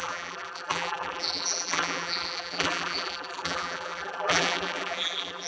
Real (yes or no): no